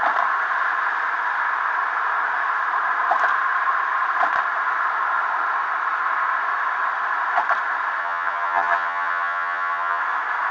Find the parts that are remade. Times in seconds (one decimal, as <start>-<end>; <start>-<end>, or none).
8.0-10.0